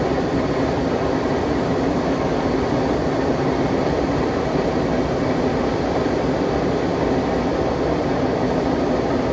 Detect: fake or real real